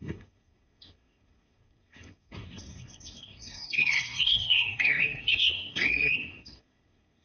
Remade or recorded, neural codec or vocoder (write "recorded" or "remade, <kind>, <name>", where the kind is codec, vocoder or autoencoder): remade, codec, SNAC